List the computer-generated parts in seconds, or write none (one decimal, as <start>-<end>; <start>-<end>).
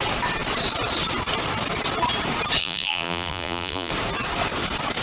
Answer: 2.6-3.9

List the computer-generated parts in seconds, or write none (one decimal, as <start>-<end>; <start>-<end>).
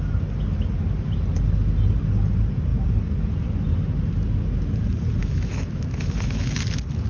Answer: 5.2-6.6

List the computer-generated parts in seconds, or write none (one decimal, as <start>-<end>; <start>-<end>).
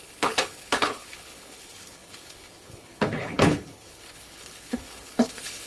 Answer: 0.0-5.7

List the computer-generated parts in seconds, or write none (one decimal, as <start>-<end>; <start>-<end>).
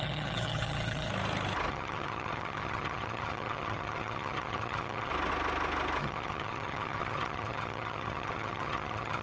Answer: 0.0-1.1; 1.7-5.1; 6.0-9.2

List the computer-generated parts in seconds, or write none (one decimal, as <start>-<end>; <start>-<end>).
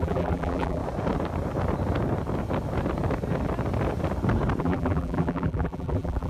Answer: 0.0-0.8; 4.6-6.3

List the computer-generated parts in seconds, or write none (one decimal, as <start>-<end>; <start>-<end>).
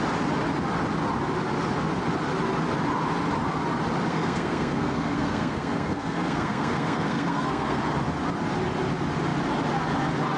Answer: 4.1-7.8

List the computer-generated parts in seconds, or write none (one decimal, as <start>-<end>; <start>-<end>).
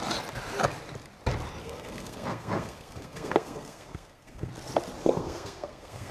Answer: 1.6-4.5; 5.0-6.1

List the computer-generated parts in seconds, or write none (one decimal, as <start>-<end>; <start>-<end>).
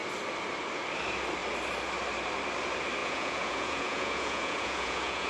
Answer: 3.0-5.3